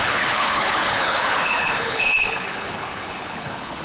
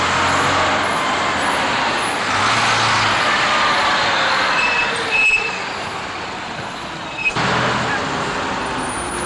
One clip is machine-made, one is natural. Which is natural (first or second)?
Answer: second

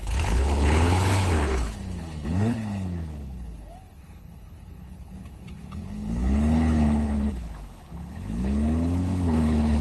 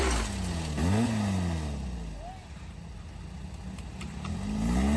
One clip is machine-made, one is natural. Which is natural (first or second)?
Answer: second